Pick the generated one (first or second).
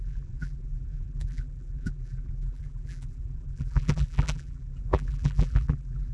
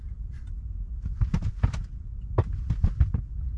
first